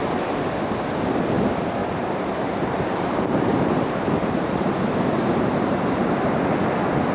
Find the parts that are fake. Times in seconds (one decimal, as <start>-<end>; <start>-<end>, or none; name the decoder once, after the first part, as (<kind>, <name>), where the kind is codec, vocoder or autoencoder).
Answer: 1.8-6.1 (vocoder, BigVGAN v2)